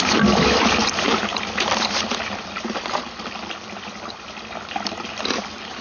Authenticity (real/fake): real